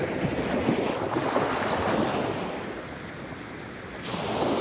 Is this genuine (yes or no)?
yes